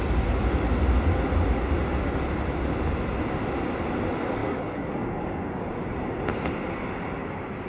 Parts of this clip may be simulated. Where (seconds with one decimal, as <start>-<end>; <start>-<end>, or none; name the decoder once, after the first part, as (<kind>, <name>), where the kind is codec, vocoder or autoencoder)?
4.4-5.7 (codec, DAC)